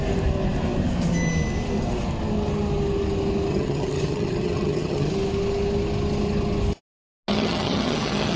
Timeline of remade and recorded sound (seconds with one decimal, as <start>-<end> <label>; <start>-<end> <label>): 0.0-3.5 recorded; 3.5-5.1 remade; 5.1-7.3 recorded; 7.3-8.4 remade